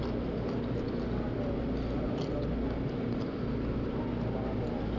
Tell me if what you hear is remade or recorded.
recorded